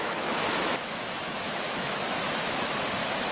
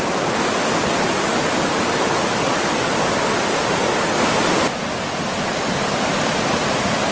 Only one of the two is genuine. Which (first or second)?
second